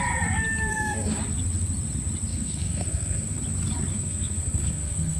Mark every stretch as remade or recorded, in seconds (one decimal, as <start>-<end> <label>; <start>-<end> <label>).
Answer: 0.0-0.7 recorded; 0.7-1.2 remade; 1.2-2.3 recorded; 2.3-3.4 remade; 3.4-3.9 recorded; 3.9-5.2 remade